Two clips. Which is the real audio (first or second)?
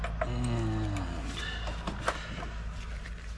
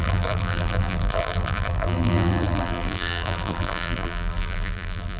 first